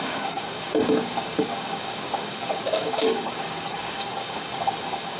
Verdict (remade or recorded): remade